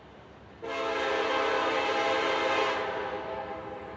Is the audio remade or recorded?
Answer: recorded